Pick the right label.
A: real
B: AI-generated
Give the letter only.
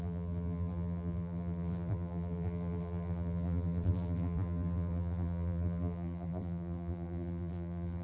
B